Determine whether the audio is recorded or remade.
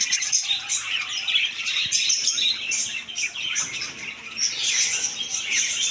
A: recorded